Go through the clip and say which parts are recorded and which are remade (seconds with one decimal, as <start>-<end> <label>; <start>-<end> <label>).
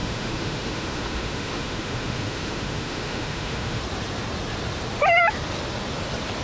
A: 0.0-3.8 remade; 3.8-6.4 recorded